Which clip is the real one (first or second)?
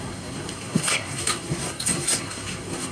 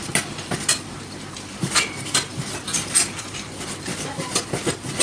second